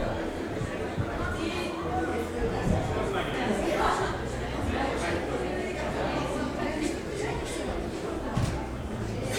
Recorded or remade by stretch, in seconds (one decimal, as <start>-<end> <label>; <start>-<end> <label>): 0.0-0.8 recorded; 0.8-2.1 remade; 2.1-5.9 recorded; 5.9-8.3 remade; 8.3-8.9 recorded; 8.9-9.4 remade